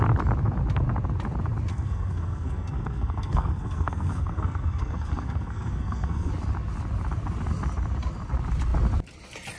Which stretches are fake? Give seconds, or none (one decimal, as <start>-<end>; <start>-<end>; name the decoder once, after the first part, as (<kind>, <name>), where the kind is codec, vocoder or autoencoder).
1.7-6.3 (codec, SNAC)